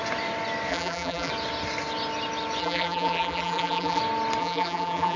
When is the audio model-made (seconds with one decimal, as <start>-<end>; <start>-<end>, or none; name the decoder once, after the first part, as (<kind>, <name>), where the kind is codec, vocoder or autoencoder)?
0.7-1.3 (vocoder, BigVGAN v2); 2.6-4.0; 4.4-5.2